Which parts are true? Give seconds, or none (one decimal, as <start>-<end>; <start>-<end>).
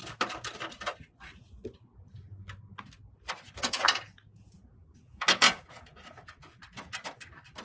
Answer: 0.0-3.6; 6.6-7.6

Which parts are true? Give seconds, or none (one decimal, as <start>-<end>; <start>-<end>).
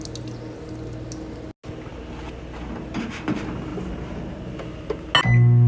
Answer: 0.0-5.7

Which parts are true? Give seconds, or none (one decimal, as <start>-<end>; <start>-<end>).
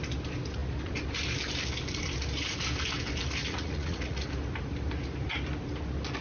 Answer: 0.0-3.4; 4.2-6.2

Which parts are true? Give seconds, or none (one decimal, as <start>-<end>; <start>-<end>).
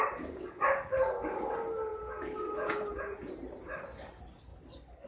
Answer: 0.0-1.9; 3.3-5.1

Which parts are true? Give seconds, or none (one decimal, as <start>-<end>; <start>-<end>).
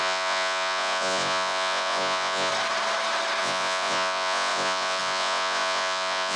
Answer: 2.5-3.4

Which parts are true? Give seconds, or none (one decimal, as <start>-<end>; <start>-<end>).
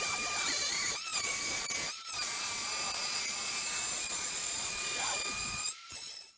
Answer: none